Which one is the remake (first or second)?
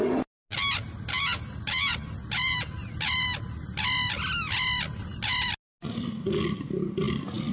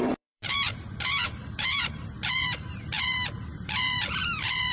second